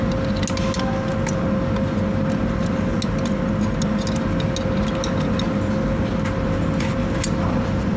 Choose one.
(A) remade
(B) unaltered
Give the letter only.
B